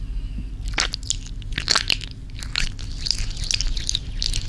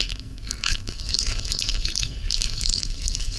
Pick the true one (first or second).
first